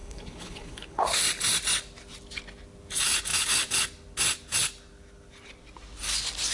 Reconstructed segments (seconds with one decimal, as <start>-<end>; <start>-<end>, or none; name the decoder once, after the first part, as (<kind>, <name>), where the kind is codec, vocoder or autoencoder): 0.0-1.2 (codec, HILCodec)